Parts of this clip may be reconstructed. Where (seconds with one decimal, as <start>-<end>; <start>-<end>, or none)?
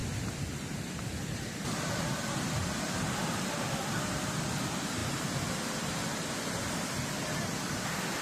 none